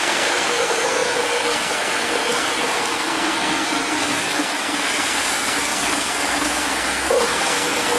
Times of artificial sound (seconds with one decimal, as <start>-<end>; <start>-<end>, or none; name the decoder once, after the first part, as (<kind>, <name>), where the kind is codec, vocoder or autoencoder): 0.0-8.0 (codec, SNAC)